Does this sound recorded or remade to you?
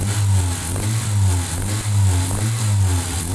recorded